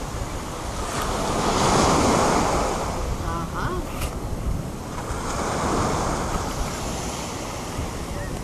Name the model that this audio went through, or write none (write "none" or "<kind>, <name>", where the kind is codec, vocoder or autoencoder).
none